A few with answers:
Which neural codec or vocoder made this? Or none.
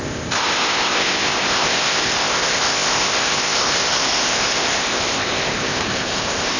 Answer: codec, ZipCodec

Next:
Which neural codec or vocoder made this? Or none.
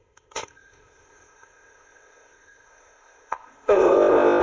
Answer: codec, ZipCodec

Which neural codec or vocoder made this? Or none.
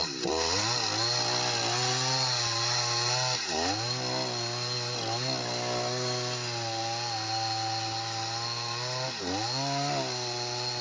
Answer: none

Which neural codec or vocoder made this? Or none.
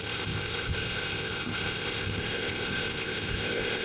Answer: codec, ZipCodec